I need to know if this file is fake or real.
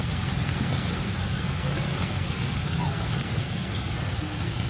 fake